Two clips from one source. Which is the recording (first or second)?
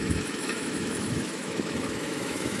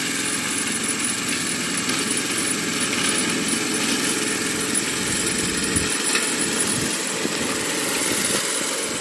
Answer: second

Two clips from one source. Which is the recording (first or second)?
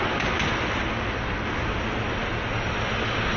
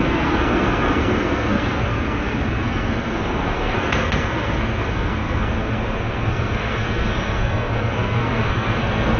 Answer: first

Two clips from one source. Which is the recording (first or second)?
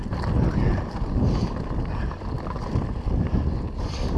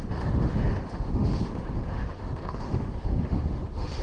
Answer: first